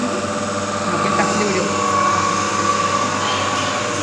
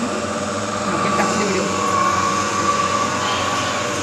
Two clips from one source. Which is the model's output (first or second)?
second